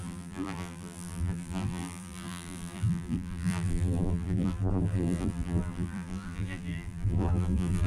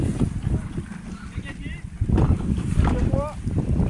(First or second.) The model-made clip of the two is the first